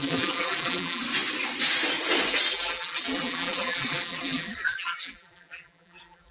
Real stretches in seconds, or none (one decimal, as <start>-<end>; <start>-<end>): 1.0-2.5

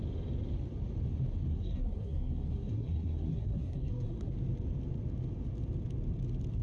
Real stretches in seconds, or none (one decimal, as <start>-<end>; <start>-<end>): 0.0-1.5; 4.3-6.6

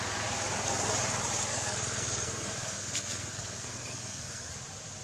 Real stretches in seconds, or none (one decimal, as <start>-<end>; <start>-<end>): 0.0-1.5; 4.5-5.0